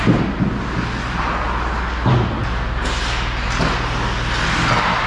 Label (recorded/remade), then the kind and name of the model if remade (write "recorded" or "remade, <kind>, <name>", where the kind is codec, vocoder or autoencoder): recorded